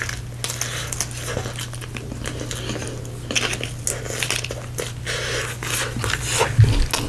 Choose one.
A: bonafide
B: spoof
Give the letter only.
A